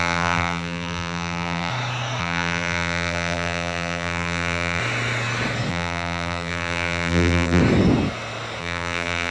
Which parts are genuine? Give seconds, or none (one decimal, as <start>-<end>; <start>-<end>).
1.7-2.2; 4.8-5.7; 7.6-8.6